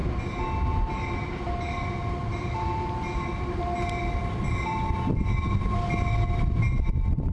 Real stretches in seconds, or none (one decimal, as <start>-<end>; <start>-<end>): 0.0-7.3